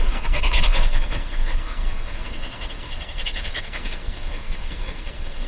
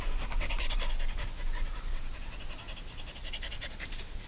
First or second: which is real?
second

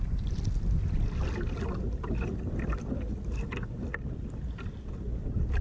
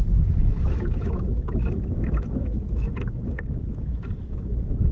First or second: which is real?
first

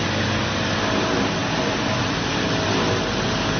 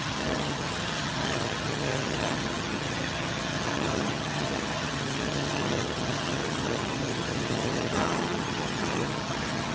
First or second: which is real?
first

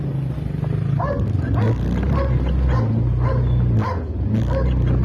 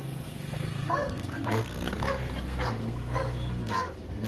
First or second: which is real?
first